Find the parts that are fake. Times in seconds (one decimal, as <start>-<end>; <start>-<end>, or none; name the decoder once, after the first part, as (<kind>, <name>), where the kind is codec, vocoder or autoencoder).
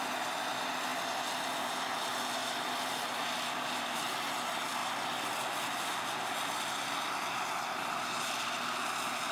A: 0.9-1.9 (vocoder, BigVGAN v2); 2.4-4.3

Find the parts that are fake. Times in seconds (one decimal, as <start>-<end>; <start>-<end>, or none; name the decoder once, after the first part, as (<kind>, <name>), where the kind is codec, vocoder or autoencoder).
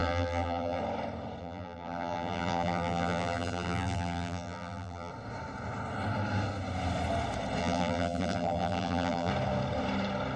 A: 0.0-0.8 (vocoder, BigVGAN v2); 1.4-5.1; 7.6-9.3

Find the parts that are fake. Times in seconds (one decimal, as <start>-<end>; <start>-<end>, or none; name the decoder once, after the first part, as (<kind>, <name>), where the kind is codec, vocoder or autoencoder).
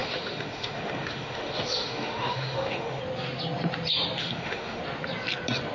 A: 0.0-3.0 (autoencoder, DAC-VAE); 4.2-4.8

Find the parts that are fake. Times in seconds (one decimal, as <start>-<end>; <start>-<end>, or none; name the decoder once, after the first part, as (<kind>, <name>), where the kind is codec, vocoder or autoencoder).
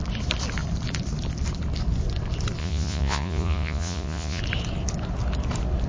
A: 2.6-4.4 (vocoder, Vocos)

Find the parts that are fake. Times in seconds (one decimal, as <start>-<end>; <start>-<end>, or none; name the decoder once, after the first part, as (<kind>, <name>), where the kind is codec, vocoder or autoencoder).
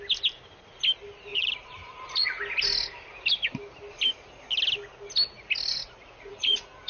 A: 1.3-2.4 (vocoder, Vocos); 5.7-6.9